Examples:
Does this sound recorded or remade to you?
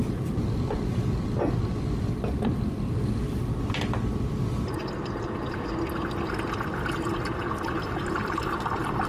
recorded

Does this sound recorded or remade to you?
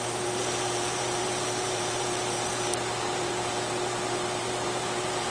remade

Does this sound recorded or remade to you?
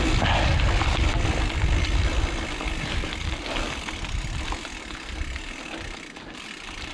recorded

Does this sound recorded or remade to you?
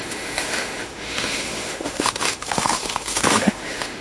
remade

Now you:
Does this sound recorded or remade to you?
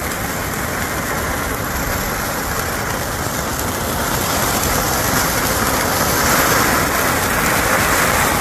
recorded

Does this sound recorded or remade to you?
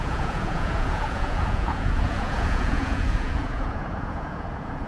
remade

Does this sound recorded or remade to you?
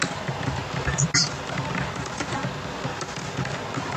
recorded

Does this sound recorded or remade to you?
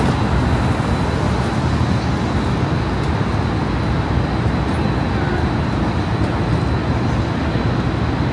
recorded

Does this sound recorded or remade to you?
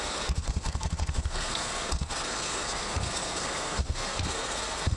remade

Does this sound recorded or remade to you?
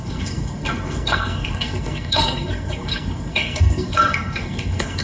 remade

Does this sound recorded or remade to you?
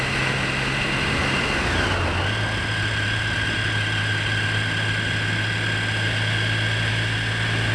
recorded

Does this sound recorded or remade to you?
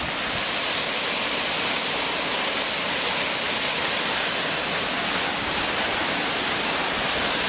recorded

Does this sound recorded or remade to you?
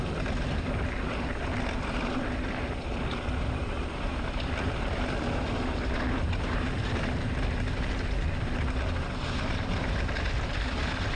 recorded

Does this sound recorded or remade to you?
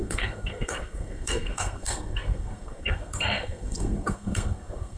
remade